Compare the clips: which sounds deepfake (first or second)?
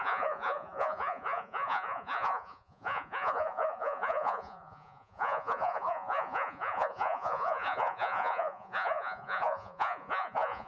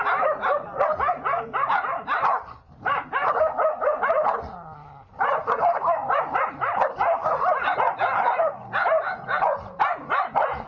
first